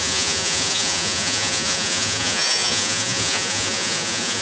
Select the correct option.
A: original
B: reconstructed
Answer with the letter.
B